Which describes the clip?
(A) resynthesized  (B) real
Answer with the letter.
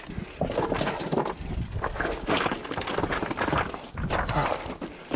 B